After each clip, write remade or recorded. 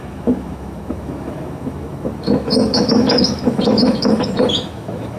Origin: remade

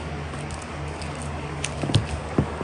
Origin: remade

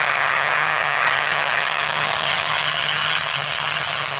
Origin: remade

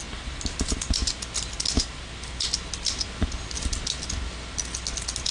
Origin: recorded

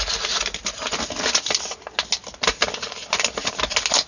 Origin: recorded